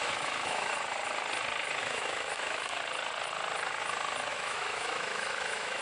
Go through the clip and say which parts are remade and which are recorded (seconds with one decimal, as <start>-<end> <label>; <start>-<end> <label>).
0.0-0.7 remade; 0.7-1.8 recorded; 1.8-2.8 remade; 2.8-4.3 recorded; 4.3-5.8 remade